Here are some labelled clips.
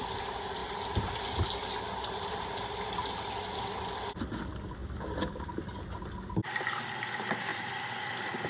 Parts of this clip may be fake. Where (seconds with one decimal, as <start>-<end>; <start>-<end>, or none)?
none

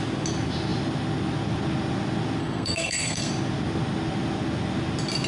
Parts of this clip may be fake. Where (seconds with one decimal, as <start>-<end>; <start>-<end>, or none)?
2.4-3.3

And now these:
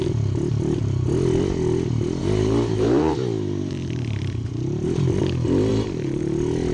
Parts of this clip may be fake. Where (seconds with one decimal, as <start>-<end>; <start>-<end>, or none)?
2.2-5.2; 5.7-6.2